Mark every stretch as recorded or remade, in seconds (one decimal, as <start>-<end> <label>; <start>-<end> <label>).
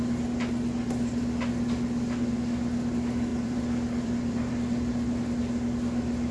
0.0-3.3 recorded; 3.3-4.5 remade; 4.5-6.3 recorded